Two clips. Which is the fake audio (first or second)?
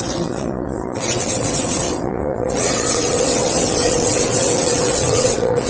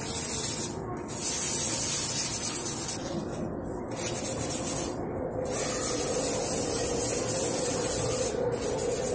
first